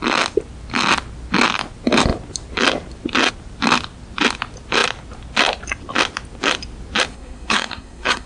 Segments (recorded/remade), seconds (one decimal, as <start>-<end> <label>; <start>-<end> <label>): 0.0-7.1 recorded; 7.1-8.3 remade